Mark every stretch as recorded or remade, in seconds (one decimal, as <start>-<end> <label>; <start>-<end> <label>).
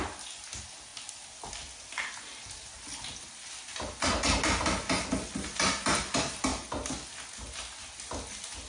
0.0-8.7 recorded